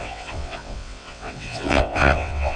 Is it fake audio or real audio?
fake